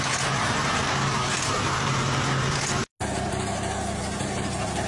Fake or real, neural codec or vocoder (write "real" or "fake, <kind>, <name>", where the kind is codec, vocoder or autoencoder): real